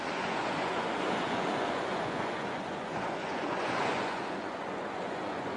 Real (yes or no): no